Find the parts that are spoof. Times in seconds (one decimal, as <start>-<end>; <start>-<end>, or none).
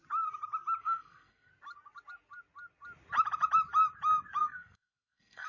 0.8-1.5; 4.4-5.5